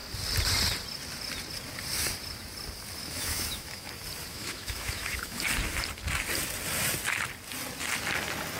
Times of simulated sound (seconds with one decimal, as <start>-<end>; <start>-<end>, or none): 3.0-3.9; 4.3-5.4